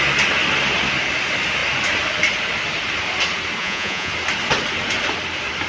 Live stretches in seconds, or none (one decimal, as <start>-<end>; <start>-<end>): 0.0-3.6; 4.1-5.7